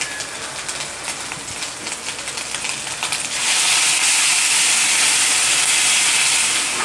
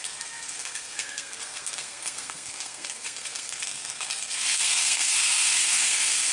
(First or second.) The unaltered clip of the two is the first